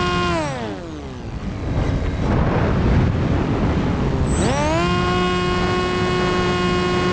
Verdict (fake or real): real